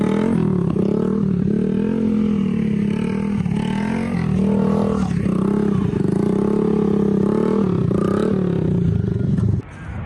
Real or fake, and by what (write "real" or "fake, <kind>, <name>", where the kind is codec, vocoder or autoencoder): real